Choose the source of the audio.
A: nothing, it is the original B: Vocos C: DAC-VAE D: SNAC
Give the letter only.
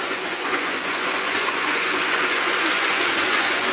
B